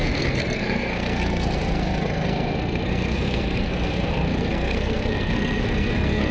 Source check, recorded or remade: remade